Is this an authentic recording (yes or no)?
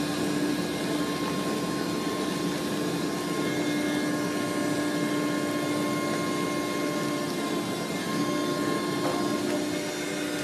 yes